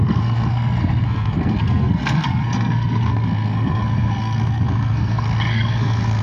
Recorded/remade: remade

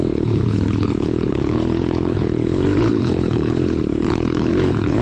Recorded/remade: remade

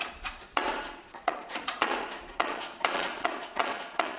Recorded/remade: remade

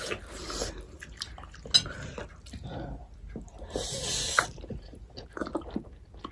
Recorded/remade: recorded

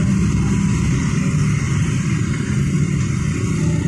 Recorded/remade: recorded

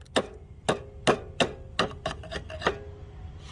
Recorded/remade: recorded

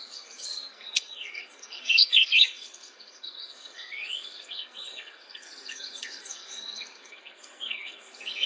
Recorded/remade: remade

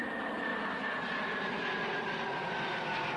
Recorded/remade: recorded